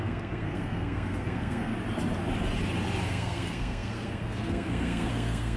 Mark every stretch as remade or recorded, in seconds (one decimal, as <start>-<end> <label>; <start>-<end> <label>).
0.0-1.7 remade; 1.7-3.1 recorded; 3.1-5.6 remade